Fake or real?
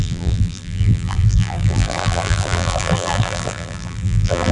fake